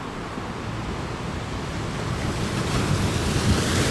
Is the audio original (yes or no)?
yes